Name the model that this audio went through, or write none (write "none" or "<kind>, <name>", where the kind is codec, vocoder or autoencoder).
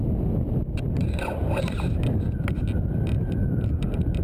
none